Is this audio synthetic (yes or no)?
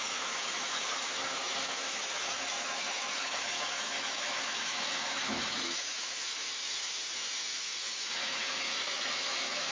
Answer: yes